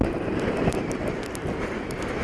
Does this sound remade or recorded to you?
recorded